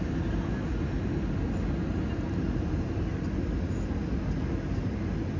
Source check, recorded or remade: recorded